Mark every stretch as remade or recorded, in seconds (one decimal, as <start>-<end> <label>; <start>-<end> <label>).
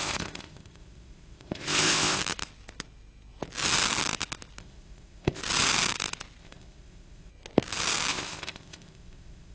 0.0-2.2 remade; 2.2-4.6 recorded; 4.6-5.4 remade; 5.4-6.4 recorded; 6.4-7.3 remade; 7.3-8.1 recorded; 8.1-9.5 remade